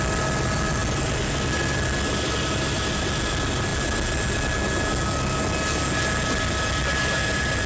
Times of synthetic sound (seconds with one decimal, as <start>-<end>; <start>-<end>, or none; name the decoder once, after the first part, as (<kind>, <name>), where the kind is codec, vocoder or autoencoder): none